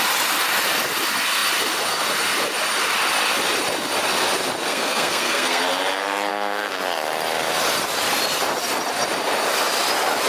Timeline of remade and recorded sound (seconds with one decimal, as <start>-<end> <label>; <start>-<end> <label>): 0.0-4.7 recorded; 4.7-5.6 remade; 5.6-6.3 recorded; 6.3-6.8 remade; 6.8-10.3 recorded